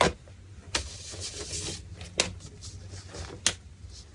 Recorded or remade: recorded